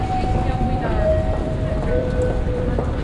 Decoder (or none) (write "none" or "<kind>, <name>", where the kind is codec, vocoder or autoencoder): vocoder, BigVGAN v2